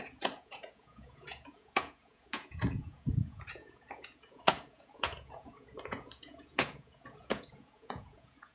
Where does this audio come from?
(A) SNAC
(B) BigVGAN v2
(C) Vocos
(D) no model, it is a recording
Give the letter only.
C